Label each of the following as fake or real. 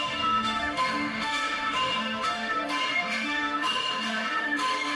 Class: fake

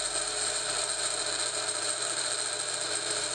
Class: real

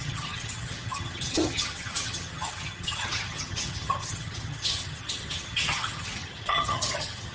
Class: fake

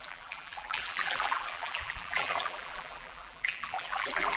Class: fake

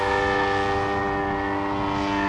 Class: real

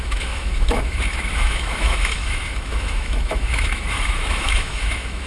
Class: fake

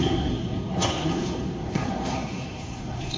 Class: fake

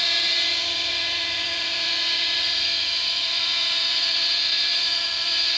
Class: fake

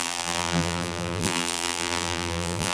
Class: fake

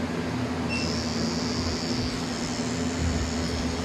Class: real